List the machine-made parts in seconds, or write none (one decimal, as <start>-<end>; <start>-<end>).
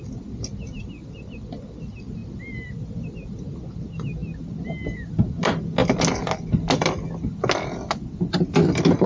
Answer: none